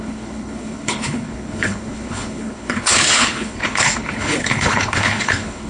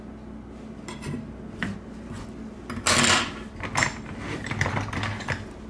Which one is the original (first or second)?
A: second